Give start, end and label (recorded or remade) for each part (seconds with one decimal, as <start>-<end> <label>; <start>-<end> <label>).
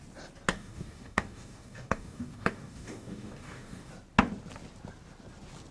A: 0.0-0.5 recorded; 0.5-3.9 remade; 3.9-5.7 recorded